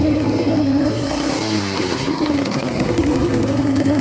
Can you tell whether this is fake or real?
fake